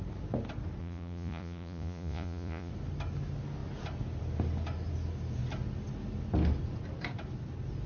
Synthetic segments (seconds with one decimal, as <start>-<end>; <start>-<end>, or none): 0.8-2.7